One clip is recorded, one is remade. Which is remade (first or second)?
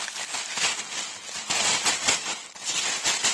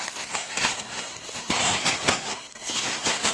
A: second